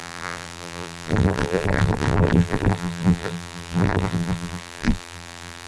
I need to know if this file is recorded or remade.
remade